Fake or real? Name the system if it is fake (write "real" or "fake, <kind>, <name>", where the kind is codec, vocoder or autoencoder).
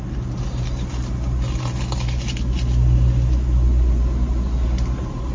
real